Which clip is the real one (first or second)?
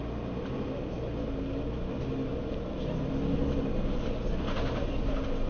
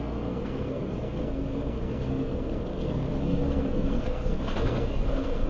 first